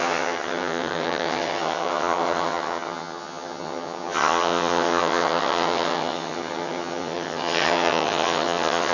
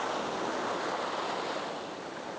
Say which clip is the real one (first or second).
second